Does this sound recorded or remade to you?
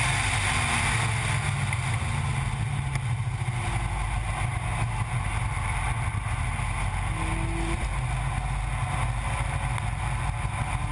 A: recorded